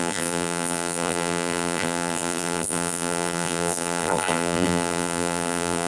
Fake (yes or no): yes